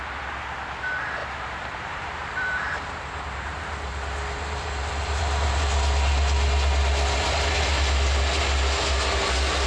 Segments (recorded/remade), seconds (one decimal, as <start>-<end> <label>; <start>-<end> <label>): 0.0-1.2 recorded; 1.2-5.6 remade; 5.6-9.7 recorded